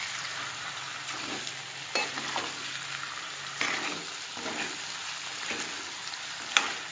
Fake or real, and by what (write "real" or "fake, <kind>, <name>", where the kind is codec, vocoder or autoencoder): real